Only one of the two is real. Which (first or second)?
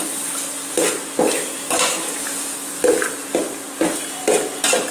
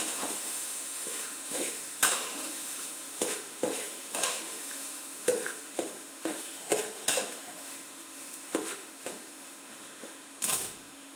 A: first